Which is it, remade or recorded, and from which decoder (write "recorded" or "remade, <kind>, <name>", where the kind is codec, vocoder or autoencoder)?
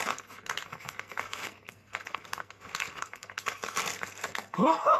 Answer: remade, codec, SNAC